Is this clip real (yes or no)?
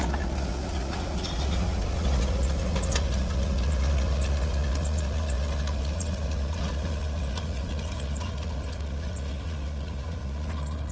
no